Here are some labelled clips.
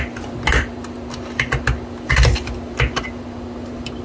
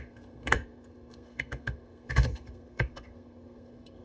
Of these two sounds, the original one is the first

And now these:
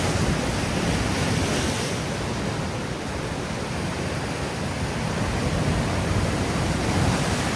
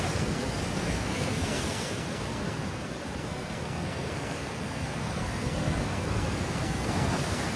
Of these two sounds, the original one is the first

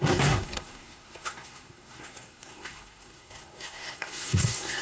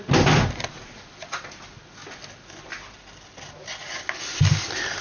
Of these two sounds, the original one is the second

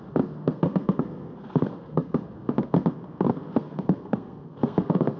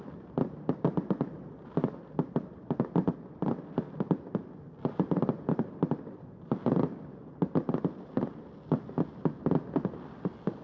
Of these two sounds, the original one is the second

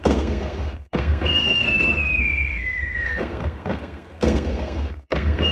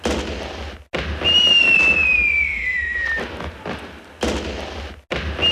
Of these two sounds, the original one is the second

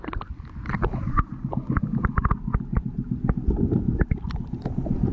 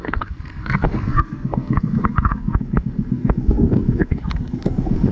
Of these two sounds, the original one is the first